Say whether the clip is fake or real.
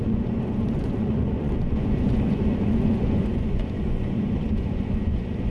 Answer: fake